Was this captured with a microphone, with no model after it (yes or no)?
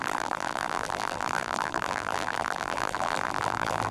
no